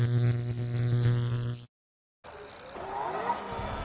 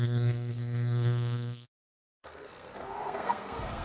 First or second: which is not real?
second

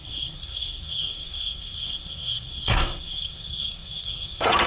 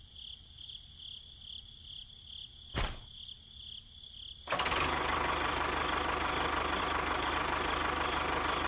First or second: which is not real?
first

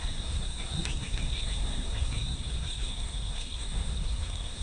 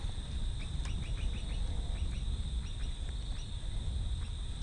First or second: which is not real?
first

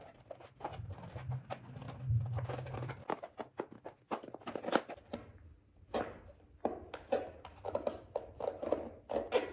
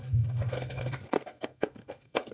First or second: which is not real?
second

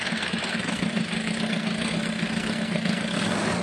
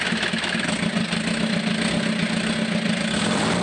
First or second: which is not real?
first